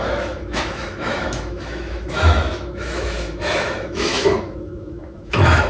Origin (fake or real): fake